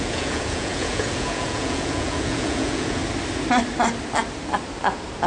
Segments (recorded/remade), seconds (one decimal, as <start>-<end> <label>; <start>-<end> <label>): 0.0-3.0 remade; 3.0-5.3 recorded